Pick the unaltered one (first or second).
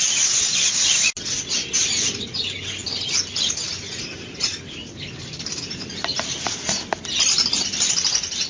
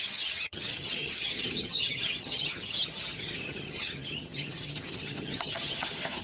first